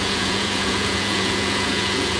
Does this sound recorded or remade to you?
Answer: remade